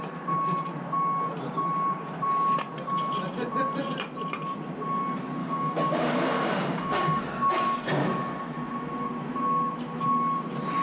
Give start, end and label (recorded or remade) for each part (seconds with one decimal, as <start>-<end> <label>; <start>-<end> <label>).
0.0-5.4 recorded; 5.4-7.2 remade; 7.2-10.8 recorded

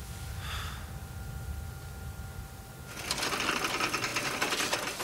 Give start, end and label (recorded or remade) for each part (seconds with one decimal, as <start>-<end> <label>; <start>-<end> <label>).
0.0-5.0 recorded

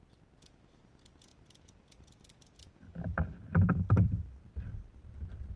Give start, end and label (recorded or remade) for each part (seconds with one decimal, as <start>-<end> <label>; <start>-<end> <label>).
0.0-1.3 recorded; 1.3-4.7 remade; 4.7-5.6 recorded

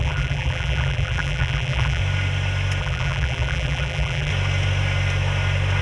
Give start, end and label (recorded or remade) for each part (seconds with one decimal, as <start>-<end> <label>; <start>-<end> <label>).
0.0-2.0 remade; 2.0-2.8 recorded; 2.8-4.3 remade; 4.3-5.8 recorded